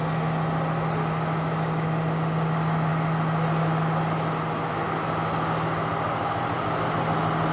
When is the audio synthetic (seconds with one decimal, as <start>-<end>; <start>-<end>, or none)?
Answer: none

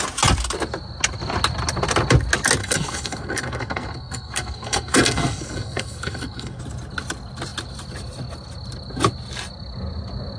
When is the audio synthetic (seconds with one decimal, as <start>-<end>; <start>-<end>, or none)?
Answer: 2.6-6.6

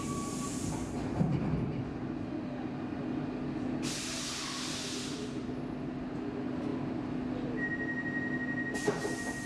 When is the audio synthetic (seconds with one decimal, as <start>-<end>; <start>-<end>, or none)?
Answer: none